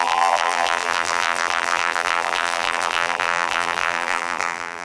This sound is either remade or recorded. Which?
remade